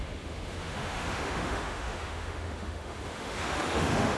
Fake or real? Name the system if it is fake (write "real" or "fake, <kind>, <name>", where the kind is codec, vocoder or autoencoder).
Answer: fake, autoencoder, DAC-VAE